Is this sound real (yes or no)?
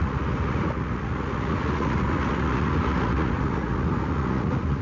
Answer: no